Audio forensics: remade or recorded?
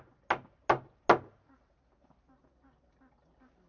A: recorded